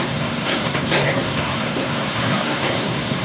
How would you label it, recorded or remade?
remade